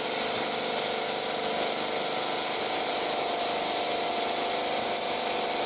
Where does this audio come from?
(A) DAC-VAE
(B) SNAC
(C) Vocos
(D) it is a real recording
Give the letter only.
D